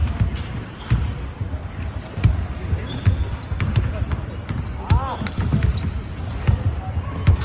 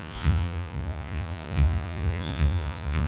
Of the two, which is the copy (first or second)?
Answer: second